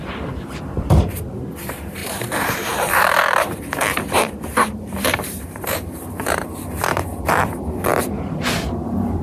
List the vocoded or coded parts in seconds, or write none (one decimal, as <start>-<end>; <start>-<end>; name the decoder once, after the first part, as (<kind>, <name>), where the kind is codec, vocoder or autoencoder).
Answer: 0.0-9.2 (vocoder, BigVGAN v2)